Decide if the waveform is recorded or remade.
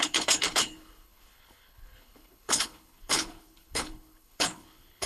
remade